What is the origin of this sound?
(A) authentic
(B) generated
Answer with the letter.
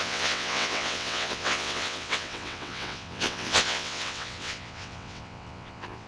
B